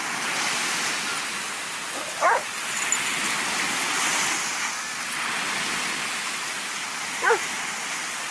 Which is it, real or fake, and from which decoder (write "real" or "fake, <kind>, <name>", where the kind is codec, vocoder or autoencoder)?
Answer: real